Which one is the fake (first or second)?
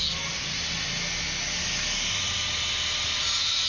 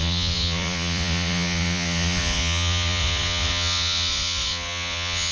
second